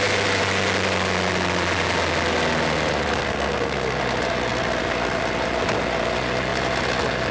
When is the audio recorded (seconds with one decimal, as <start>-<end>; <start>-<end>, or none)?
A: 0.0-3.2; 4.0-7.3